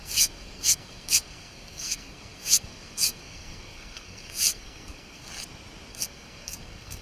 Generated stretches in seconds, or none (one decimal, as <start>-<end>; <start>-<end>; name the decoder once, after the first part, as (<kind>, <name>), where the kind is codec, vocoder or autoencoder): 0.0-5.3 (codec, SNAC); 5.9-7.0